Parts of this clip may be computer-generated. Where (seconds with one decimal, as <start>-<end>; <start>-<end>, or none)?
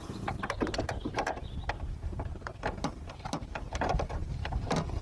0.0-5.0